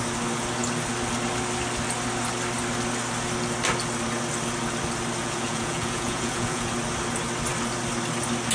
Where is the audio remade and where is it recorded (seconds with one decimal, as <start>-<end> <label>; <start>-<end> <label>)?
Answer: 0.0-5.2 recorded; 5.2-6.7 remade; 6.7-8.5 recorded